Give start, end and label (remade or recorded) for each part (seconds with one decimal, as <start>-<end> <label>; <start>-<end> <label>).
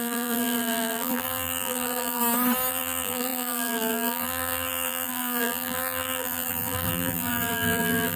0.0-2.2 remade; 2.2-2.7 recorded; 2.7-8.2 remade